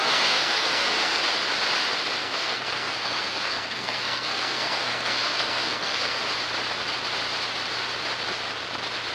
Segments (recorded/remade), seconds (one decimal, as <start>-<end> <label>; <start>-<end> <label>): 0.0-1.2 remade; 1.2-2.2 recorded; 2.2-6.2 remade; 6.2-9.1 recorded